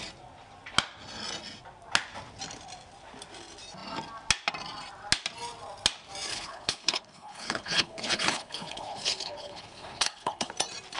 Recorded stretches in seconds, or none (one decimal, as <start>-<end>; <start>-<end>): 0.0-6.3; 10.5-11.0